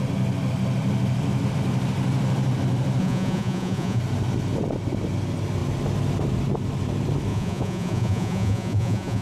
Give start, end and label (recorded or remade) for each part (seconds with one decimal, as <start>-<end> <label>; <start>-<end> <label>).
0.0-3.0 recorded; 3.0-4.0 remade; 4.0-7.3 recorded; 7.3-9.2 remade